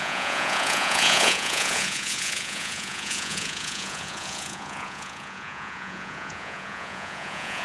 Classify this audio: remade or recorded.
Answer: remade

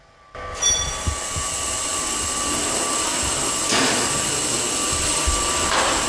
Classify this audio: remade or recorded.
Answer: recorded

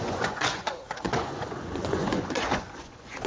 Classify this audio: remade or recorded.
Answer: remade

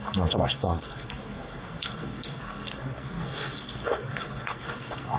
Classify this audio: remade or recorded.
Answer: remade